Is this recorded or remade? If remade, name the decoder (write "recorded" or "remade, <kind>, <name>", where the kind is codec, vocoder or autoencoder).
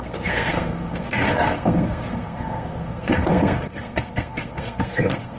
remade, codec, SNAC